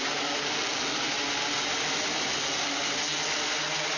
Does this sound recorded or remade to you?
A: recorded